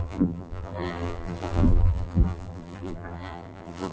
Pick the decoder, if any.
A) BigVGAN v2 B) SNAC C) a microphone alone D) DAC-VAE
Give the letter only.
A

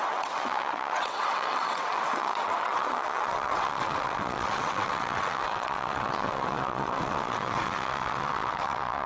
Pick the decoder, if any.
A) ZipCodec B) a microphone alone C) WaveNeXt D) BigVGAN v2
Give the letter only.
C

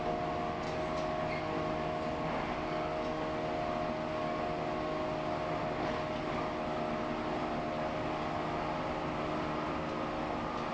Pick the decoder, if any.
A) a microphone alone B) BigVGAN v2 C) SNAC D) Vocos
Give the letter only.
A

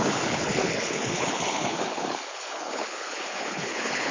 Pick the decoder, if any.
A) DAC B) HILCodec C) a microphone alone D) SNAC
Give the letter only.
B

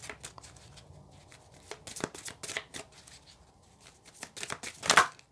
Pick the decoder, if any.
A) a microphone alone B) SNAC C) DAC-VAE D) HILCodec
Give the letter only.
A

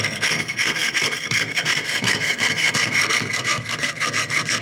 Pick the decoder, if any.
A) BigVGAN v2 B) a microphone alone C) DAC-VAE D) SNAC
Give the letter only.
D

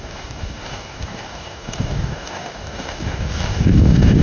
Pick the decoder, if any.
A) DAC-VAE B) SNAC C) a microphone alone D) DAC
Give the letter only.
D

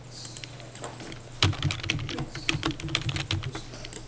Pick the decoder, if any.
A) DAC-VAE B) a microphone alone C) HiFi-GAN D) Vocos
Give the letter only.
B